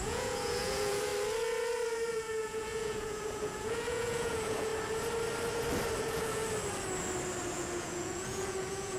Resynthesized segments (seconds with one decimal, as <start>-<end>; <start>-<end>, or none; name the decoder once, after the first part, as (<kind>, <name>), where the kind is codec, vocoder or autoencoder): 0.0-1.1 (vocoder, Vocos); 2.1-4.7; 6.0-6.4; 7.5-9.0